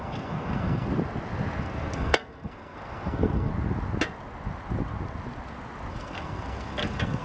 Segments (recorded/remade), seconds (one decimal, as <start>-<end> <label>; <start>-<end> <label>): 0.0-0.9 remade; 0.9-1.6 recorded; 1.6-3.5 remade; 3.5-5.9 recorded; 5.9-7.2 remade